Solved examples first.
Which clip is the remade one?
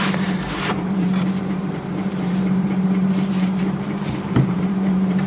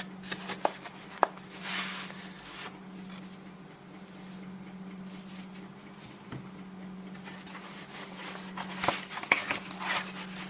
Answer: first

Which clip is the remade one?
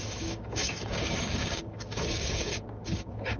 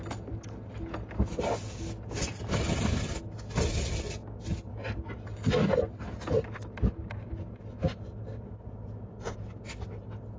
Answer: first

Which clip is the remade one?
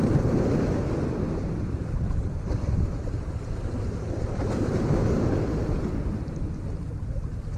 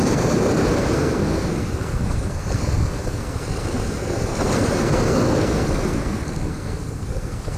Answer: second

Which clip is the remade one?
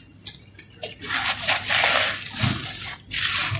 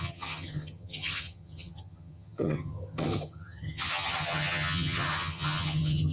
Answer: second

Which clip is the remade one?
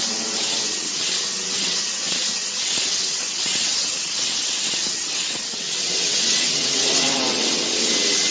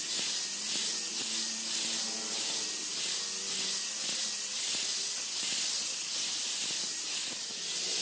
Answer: first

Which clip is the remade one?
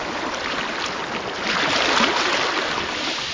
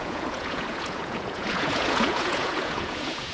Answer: second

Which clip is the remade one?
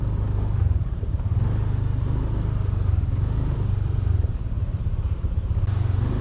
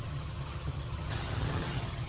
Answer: second